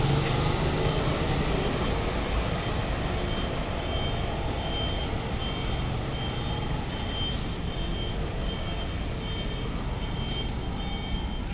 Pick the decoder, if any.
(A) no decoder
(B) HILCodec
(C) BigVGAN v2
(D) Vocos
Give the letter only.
A